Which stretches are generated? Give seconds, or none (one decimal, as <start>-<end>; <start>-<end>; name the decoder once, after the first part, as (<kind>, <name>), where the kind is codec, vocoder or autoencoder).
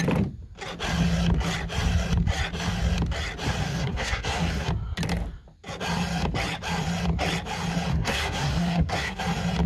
3.6-4.7 (codec, SNAC); 7.9-9.2